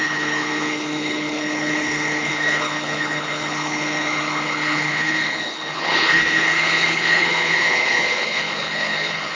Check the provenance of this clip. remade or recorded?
remade